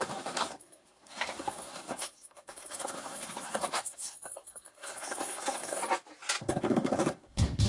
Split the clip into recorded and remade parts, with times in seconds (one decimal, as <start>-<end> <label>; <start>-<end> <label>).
0.0-5.8 remade; 5.8-6.4 recorded; 6.4-7.7 remade